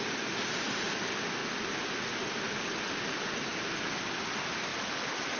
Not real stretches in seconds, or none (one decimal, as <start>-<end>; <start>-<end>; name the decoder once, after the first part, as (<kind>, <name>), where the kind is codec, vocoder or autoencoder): none